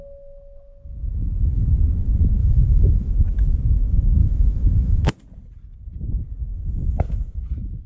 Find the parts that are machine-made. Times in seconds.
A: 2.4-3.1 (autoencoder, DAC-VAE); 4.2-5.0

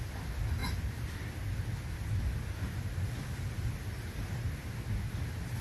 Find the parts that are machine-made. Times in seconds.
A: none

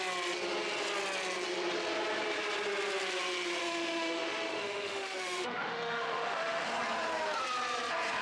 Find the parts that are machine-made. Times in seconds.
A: 3.6-6.7 (autoencoder, DAC-VAE)